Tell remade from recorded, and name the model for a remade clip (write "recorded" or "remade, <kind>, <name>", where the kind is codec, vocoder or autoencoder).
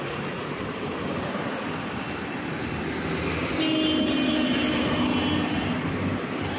recorded